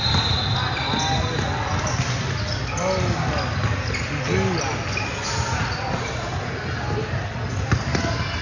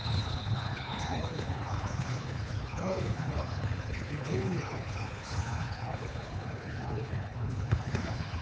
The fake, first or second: second